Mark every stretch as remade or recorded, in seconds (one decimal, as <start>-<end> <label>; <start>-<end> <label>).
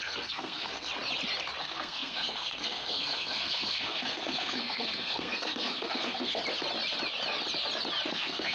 0.0-0.9 remade; 0.9-1.6 recorded; 1.6-6.4 remade; 6.4-8.1 recorded; 8.1-8.5 remade